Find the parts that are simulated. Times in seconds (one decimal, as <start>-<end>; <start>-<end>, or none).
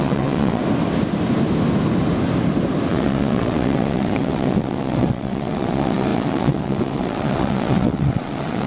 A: 0.0-0.6; 2.9-8.7